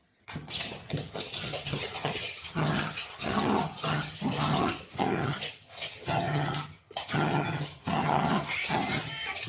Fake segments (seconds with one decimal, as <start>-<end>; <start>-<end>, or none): 0.0-9.5